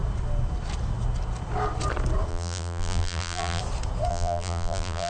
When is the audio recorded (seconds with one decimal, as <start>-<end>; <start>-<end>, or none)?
0.0-2.3; 3.6-4.1